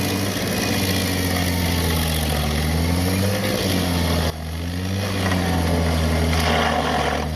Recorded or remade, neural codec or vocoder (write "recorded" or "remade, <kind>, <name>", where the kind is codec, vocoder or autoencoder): recorded